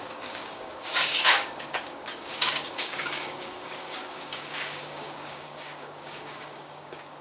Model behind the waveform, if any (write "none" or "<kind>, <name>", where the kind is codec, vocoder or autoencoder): codec, DAC